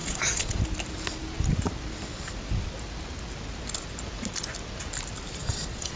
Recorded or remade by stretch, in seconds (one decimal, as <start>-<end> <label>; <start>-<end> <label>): 0.0-0.6 remade; 0.6-5.4 recorded; 5.4-6.0 remade